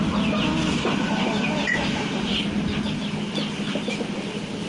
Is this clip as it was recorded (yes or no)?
yes